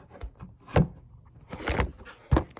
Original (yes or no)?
yes